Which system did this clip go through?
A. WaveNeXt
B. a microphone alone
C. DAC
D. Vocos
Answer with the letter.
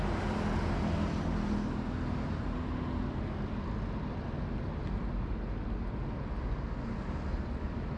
B